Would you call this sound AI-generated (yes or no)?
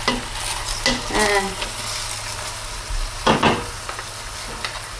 no